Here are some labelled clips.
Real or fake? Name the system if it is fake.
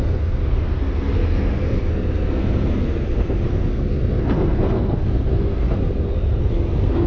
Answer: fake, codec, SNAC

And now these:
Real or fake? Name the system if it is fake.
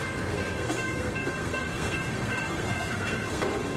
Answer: fake, codec, SNAC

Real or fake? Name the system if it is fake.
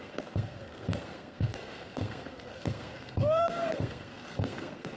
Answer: fake, codec, SNAC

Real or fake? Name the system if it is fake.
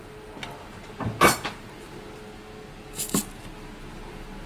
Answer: real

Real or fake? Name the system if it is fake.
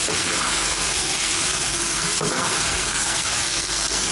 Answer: fake, codec, SNAC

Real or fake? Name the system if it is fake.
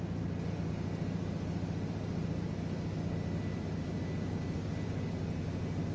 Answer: real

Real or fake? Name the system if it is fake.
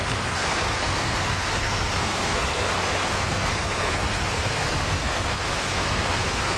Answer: fake, codec, SNAC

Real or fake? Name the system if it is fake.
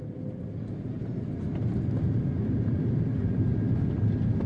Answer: real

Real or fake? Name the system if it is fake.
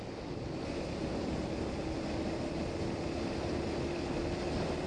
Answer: real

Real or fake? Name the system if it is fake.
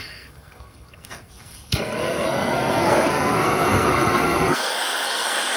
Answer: fake, codec, SNAC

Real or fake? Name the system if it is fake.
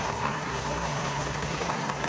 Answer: fake, codec, SNAC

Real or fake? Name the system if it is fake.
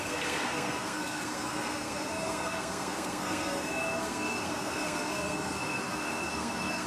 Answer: fake, codec, SNAC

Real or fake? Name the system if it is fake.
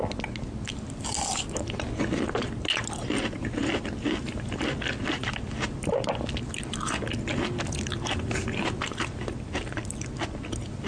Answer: real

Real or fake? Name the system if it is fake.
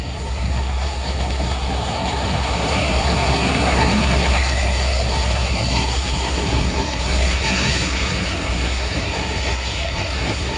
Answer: fake, codec, SNAC